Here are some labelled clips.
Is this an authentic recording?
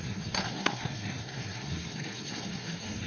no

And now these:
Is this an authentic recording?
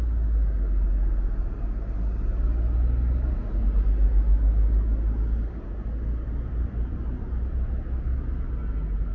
yes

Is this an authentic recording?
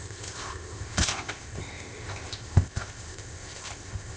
no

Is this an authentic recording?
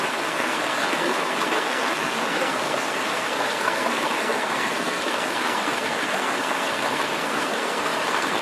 no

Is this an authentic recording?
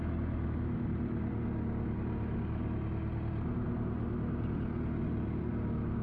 yes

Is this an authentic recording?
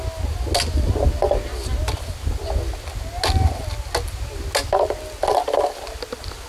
yes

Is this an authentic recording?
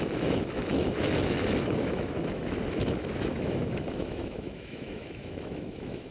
no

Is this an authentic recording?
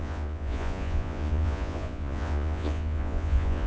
no